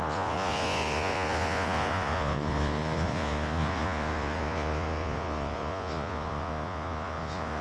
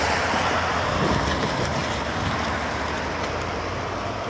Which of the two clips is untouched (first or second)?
second